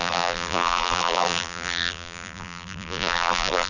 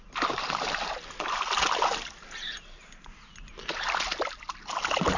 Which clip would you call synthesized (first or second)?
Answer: first